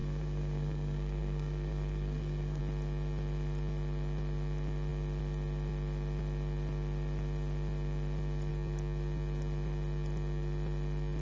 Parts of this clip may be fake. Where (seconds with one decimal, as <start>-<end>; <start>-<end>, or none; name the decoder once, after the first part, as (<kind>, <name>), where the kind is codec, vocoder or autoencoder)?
0.0-2.6 (codec, SNAC)